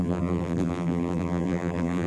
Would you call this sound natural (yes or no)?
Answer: no